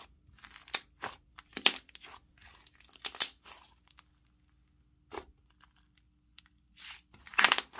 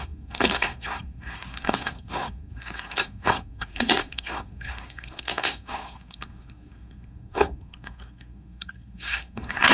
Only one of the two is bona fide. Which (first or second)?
first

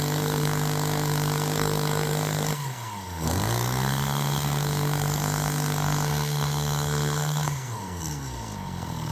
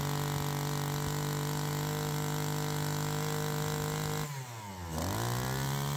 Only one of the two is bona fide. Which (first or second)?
second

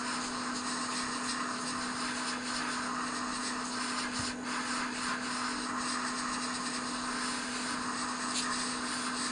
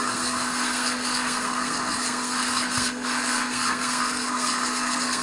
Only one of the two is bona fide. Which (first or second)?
first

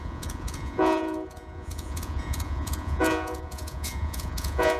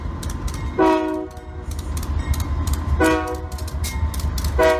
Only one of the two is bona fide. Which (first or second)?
second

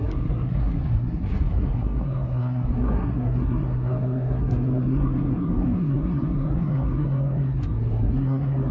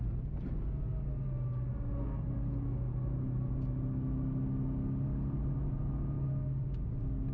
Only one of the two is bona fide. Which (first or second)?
second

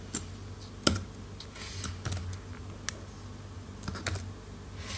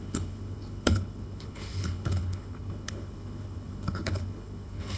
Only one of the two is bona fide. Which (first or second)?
first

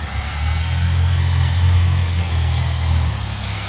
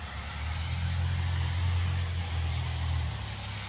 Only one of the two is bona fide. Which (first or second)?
second